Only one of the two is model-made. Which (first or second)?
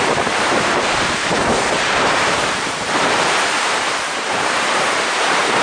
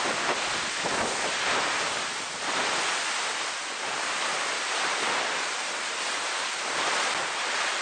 first